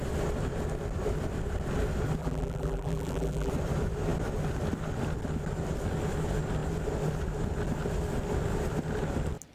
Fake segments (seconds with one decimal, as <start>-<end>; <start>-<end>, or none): 2.2-3.5